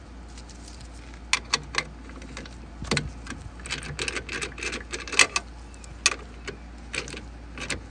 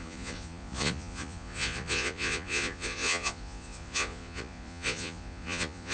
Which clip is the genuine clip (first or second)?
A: first